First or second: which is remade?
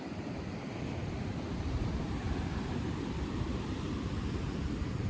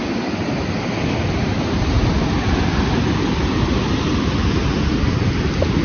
first